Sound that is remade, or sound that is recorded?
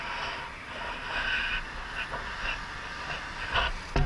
recorded